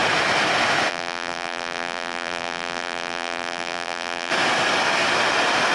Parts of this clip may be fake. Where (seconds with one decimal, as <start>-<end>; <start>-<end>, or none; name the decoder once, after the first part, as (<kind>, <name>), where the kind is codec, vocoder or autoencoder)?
0.9-4.3 (vocoder, BigVGAN v2)